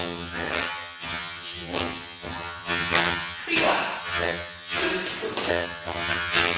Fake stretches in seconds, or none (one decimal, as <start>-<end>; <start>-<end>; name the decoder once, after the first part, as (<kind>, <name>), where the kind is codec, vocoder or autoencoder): 0.0-3.4 (vocoder, HiFi-GAN); 4.0-4.8; 5.5-6.6